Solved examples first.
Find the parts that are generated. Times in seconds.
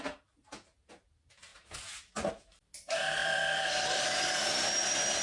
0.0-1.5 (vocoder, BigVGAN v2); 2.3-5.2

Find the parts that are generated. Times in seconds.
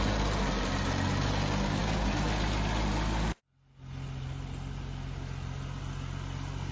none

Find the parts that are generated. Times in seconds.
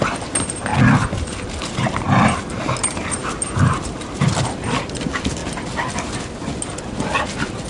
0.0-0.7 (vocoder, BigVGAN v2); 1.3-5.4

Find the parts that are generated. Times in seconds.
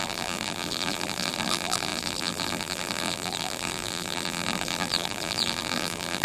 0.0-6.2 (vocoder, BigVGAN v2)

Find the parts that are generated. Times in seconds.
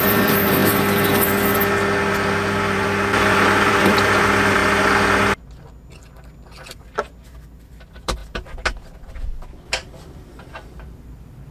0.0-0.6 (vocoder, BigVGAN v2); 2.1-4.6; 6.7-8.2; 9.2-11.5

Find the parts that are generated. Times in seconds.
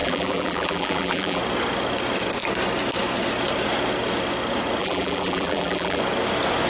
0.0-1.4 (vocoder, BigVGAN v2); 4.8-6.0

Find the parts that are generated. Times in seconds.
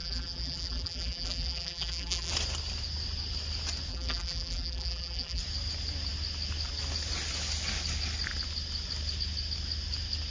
0.0-2.3 (vocoder, BigVGAN v2); 3.9-5.4